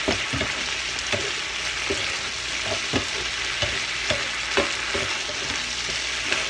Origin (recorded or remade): recorded